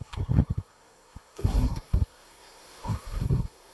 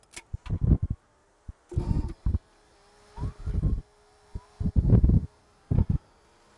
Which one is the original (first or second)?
second